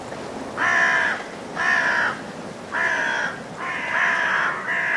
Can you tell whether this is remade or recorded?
recorded